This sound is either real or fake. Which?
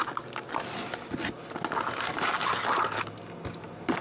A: real